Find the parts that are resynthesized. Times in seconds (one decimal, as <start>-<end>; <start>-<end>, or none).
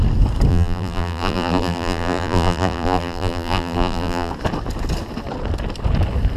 0.5-4.3